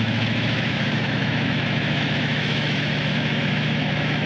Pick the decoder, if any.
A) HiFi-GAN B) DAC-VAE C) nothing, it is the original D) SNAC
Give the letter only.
B